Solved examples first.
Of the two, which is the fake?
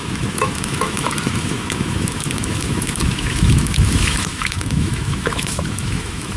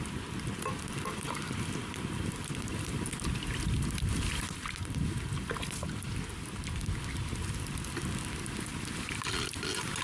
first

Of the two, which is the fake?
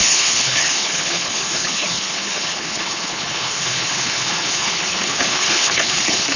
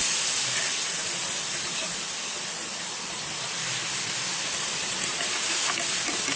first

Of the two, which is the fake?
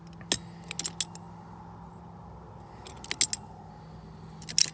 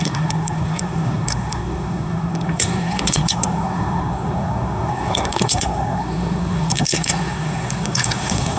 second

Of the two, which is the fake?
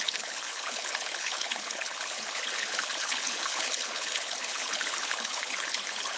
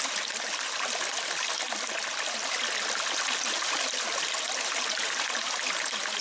first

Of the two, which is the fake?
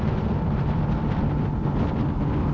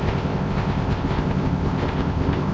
second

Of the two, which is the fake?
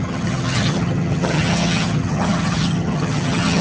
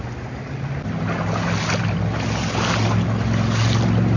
first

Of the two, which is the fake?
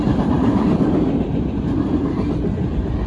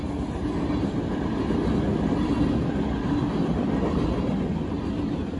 first